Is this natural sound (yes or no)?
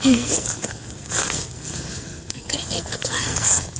no